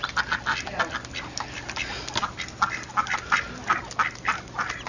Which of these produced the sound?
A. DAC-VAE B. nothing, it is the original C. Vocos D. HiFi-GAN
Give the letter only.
B